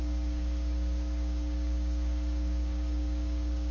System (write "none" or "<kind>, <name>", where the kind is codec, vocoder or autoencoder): codec, DAC